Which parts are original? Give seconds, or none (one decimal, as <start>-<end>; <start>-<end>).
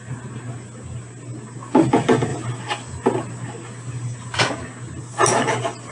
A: 0.0-5.9